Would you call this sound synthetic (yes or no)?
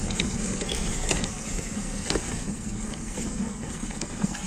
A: yes